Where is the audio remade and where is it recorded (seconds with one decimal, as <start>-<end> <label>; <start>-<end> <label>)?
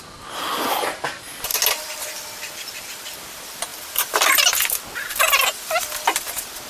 0.0-6.7 recorded